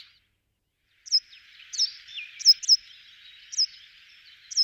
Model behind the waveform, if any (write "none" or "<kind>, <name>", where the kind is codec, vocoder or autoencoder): none